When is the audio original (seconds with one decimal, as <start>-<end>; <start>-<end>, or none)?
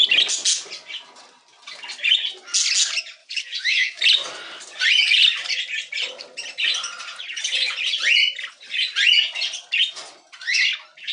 0.0-3.2; 4.0-11.1